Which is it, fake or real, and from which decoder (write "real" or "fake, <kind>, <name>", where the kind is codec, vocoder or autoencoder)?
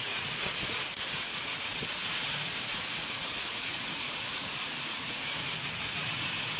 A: fake, vocoder, Vocos